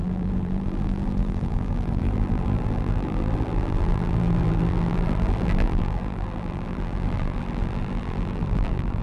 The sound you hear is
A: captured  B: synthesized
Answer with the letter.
B